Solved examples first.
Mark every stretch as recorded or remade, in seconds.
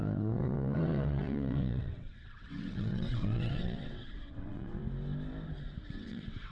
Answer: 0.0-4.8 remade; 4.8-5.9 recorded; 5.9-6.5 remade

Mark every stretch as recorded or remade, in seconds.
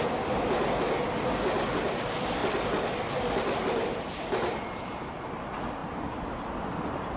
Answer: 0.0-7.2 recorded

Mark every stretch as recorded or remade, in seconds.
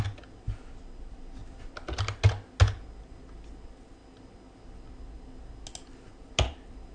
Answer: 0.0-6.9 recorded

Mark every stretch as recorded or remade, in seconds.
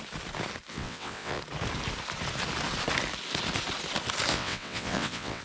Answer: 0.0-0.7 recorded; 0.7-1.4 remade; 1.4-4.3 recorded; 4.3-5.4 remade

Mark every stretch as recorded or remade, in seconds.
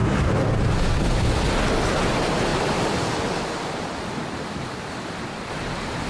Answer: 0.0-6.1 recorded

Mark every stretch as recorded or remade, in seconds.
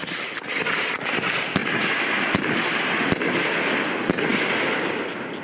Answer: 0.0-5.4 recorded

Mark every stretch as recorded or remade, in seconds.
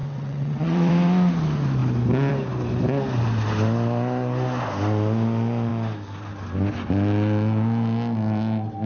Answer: 0.0-0.9 remade; 0.9-8.9 recorded